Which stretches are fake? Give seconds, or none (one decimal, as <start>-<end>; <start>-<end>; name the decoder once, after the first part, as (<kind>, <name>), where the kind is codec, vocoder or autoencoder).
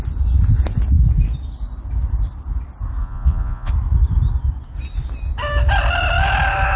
3.0-3.7 (vocoder, Vocos)